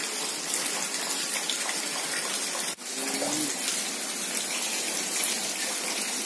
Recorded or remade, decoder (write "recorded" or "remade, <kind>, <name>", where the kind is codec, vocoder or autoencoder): recorded